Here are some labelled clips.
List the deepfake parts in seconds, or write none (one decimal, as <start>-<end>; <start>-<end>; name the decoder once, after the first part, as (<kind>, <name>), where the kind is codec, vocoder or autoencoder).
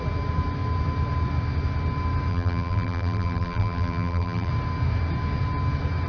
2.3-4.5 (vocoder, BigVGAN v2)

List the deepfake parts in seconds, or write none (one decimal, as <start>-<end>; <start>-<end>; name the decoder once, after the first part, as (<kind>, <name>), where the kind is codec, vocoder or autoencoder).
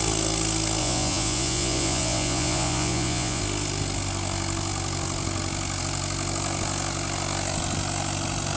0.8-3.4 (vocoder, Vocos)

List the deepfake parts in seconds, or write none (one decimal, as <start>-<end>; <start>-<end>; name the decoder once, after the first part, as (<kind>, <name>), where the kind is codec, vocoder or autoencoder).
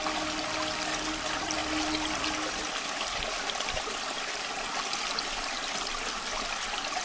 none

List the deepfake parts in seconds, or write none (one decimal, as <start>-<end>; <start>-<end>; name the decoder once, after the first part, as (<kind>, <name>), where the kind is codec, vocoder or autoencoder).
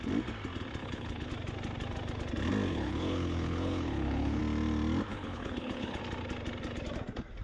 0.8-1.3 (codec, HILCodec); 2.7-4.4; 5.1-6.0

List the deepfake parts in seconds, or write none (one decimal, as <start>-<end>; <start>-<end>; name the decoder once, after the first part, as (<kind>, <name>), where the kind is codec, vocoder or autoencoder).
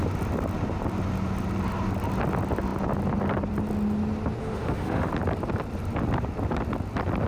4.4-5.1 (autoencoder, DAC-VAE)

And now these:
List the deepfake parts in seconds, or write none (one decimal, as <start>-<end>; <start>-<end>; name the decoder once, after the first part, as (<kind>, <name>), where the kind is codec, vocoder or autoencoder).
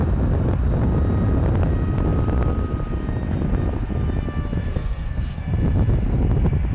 4.7-5.4 (codec, SNAC)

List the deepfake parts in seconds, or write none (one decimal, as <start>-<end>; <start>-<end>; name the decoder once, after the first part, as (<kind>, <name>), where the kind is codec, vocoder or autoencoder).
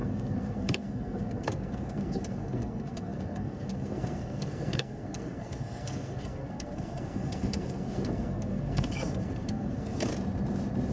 0.0-10.1 (codec, SNAC)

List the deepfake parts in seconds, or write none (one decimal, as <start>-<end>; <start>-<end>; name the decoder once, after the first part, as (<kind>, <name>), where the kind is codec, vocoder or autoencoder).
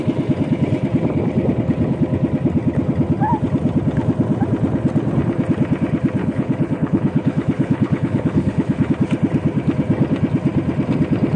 6.2-8.9 (codec, HILCodec)